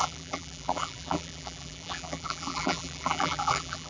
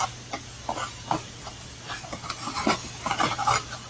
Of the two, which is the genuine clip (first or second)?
second